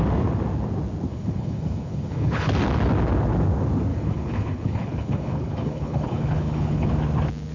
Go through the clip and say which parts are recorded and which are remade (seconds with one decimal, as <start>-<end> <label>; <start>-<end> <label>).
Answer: 0.0-1.1 recorded; 1.1-2.5 remade; 2.5-3.9 recorded; 3.9-6.9 remade; 6.9-7.5 recorded